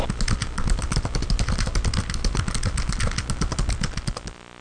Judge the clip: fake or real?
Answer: real